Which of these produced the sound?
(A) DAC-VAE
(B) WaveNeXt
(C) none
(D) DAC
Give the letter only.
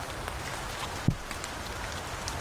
C